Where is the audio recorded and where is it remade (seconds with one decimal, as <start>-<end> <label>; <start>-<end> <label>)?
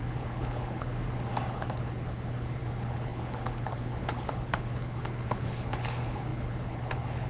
0.0-0.9 remade; 0.9-1.5 recorded; 1.5-7.3 remade